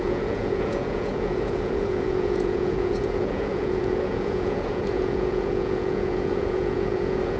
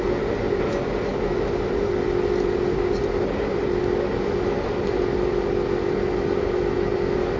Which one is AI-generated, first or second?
first